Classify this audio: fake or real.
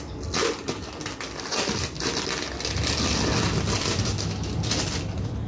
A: real